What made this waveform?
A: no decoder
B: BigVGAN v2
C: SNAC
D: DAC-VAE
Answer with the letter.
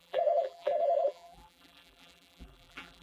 B